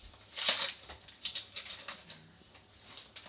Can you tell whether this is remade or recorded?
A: recorded